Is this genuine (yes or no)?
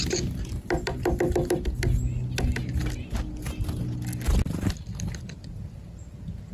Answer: yes